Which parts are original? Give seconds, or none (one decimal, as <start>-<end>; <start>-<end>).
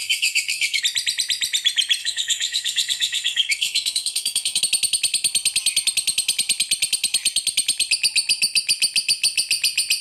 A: 0.8-2.0; 4.6-10.0